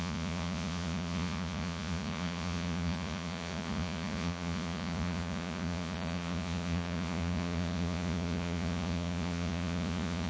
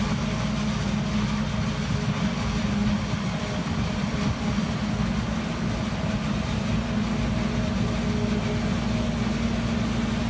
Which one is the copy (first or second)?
first